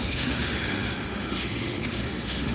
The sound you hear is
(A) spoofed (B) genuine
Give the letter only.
A